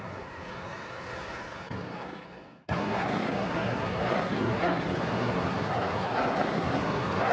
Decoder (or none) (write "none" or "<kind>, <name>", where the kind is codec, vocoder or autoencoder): codec, SNAC